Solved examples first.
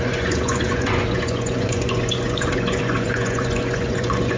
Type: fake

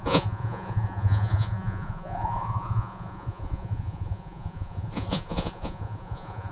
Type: fake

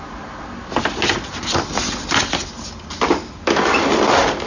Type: real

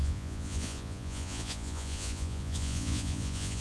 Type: fake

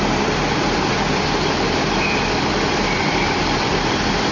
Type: real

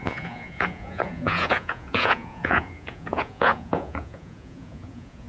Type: fake